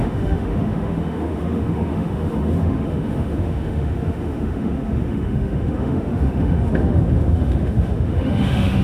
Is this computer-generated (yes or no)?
yes